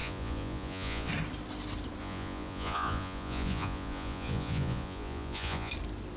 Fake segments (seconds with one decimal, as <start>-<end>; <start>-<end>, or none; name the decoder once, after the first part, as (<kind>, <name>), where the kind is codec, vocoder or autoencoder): 0.0-1.1 (vocoder, Vocos); 2.0-5.7